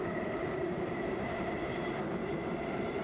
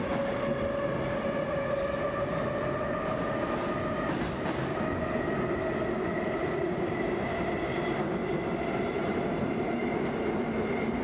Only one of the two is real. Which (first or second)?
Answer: second